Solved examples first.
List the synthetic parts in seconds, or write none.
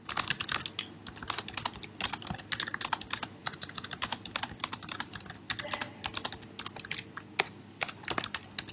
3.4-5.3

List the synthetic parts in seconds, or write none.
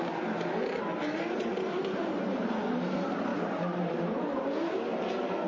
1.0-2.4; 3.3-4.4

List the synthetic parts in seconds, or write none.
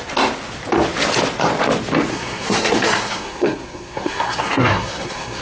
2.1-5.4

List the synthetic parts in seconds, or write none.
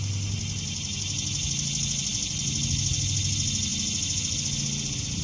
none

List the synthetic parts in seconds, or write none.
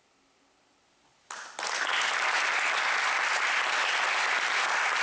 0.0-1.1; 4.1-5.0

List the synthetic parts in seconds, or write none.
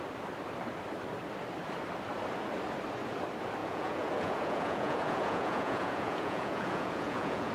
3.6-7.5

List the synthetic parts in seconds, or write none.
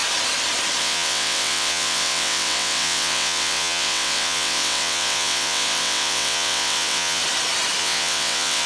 0.8-7.2; 7.8-8.7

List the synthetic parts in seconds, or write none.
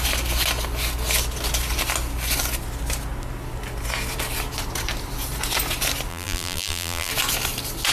6.1-7.1